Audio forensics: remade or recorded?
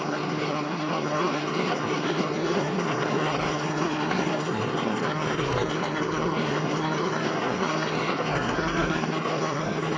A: remade